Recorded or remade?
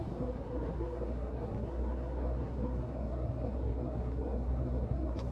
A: remade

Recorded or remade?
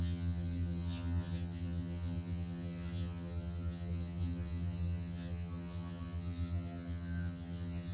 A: remade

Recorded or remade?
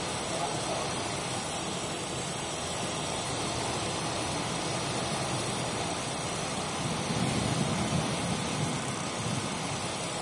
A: recorded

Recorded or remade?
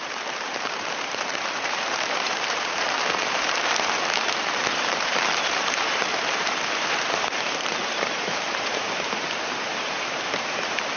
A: remade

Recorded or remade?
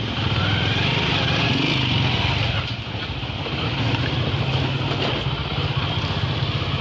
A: recorded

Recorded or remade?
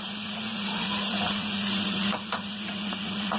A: remade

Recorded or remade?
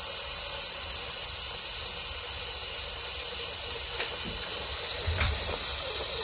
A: recorded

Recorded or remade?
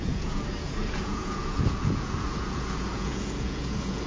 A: remade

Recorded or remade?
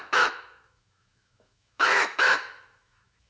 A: remade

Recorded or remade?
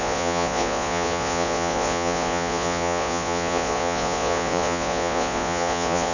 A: remade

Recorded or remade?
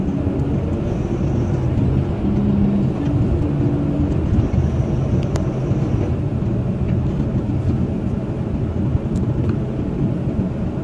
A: recorded